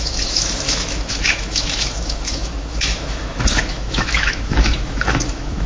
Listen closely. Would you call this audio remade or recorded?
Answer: remade